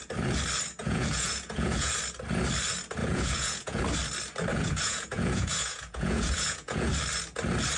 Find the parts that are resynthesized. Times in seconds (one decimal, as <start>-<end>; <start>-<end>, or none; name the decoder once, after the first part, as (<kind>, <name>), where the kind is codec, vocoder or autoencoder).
0.8-1.9 (vocoder, Vocos); 3.0-3.8; 4.5-6.9